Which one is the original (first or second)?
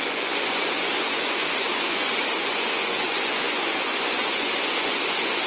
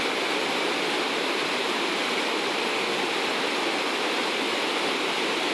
second